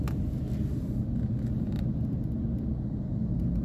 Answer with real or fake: real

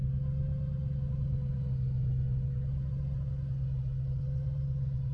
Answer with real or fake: real